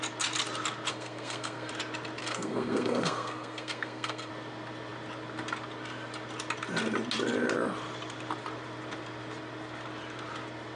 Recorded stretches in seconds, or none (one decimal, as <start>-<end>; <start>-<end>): 0.0-0.9; 1.7-2.2; 4.3-10.8